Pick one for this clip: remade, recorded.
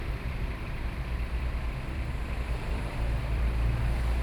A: remade